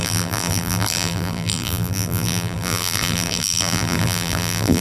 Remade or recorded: remade